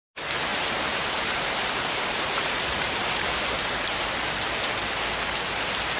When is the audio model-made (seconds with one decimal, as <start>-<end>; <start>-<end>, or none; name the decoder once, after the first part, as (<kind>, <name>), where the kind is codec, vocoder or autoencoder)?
0.5-4.1 (vocoder, BigVGAN v2)